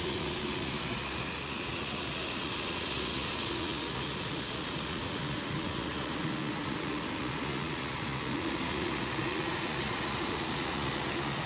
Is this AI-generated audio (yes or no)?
yes